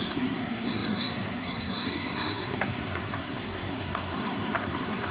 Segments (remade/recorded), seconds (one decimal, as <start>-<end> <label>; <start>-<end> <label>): 0.0-5.1 remade